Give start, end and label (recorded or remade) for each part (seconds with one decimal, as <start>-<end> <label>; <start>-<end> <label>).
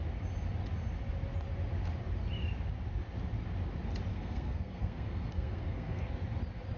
0.0-4.1 recorded; 4.1-6.1 remade; 6.1-6.8 recorded